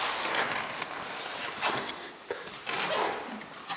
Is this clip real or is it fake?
real